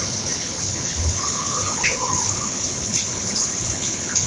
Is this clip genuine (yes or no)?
no